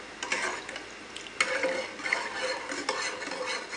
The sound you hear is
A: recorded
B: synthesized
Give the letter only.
A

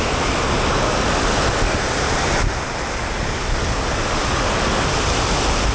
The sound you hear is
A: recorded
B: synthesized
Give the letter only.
A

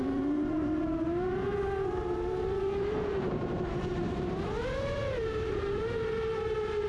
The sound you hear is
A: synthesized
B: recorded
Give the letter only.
A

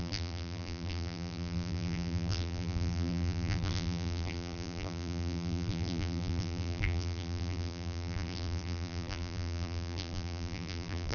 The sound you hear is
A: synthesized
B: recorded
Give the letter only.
A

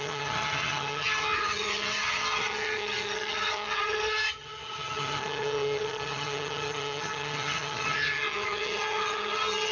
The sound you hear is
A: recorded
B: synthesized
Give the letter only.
B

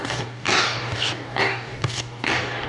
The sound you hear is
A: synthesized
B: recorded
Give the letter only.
A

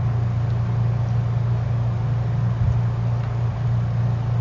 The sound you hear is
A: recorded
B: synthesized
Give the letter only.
A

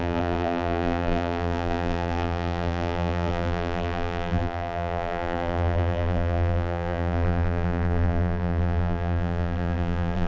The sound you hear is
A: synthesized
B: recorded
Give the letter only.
A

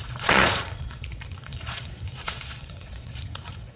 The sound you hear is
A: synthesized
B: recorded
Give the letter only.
A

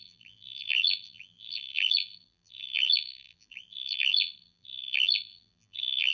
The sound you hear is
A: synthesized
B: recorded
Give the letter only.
A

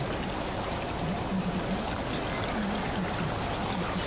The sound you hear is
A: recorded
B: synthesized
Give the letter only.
A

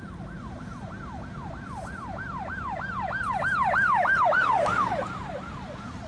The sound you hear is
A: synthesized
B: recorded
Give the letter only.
B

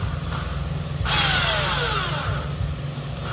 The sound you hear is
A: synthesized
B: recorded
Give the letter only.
B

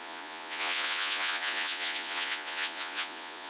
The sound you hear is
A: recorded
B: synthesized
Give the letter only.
B